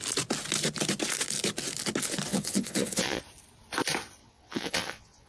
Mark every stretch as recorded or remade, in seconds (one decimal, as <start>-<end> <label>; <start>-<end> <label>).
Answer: 0.0-2.3 recorded; 2.3-3.2 remade; 3.2-4.2 recorded; 4.2-5.3 remade